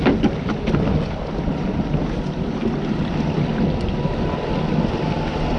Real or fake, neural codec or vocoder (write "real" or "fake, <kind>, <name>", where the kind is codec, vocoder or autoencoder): real